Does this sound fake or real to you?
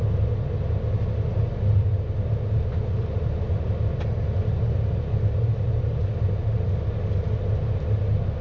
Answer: real